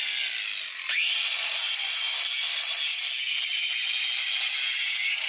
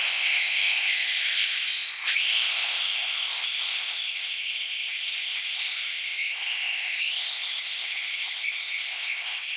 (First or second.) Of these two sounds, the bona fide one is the first